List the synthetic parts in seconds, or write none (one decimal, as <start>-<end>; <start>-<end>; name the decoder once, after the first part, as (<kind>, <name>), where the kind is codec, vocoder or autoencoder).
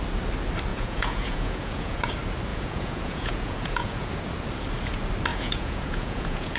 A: 0.7-2.1 (vocoder, Vocos); 2.5-4.2; 5.3-6.6